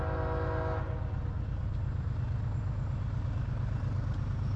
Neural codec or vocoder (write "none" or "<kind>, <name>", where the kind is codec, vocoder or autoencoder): none